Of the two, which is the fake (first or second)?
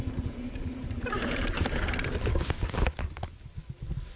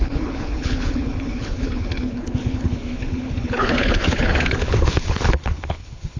second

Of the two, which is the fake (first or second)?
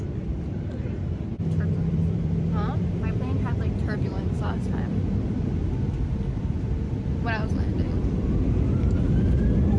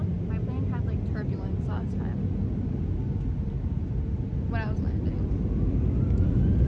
first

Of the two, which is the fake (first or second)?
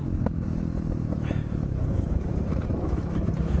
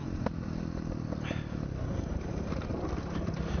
first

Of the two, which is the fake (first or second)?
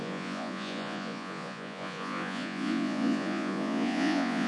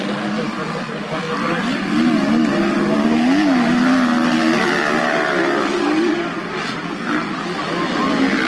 first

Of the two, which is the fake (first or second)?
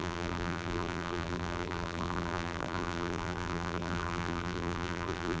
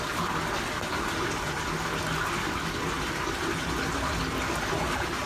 first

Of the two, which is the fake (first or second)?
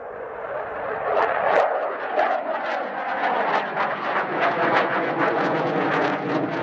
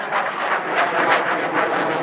first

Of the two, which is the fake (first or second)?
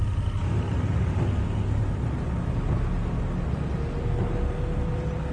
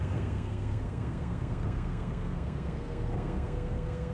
second